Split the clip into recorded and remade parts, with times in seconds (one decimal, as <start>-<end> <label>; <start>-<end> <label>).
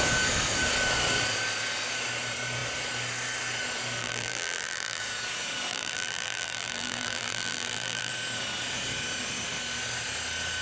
0.0-4.0 recorded; 4.0-5.0 remade; 5.0-5.7 recorded; 5.7-8.1 remade; 8.1-10.6 recorded